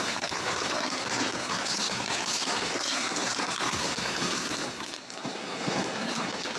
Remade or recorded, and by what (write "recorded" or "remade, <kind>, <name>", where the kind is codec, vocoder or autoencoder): remade, codec, SNAC